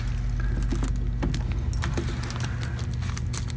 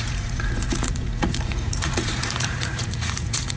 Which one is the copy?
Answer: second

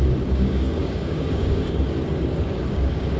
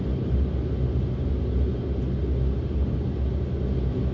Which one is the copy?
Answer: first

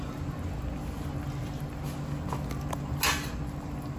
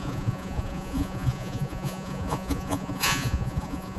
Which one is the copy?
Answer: second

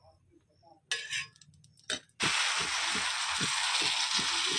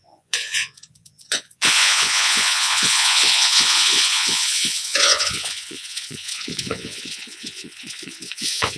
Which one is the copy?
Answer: second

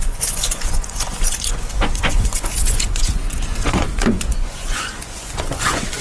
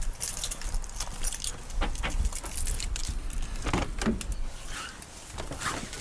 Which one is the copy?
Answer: first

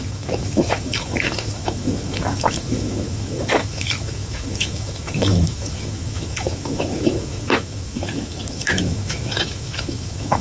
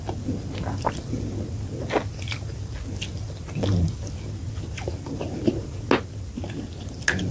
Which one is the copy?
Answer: first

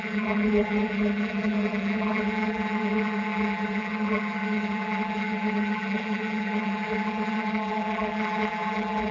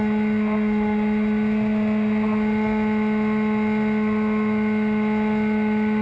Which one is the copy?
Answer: first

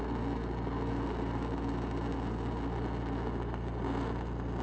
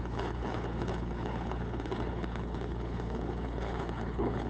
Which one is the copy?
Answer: second